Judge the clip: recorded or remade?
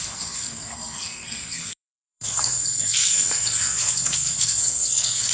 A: remade